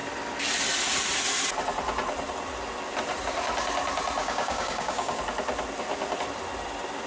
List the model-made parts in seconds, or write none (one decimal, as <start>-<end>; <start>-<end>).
4.2-5.2